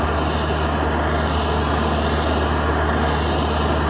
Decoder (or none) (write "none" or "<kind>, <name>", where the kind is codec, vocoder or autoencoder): none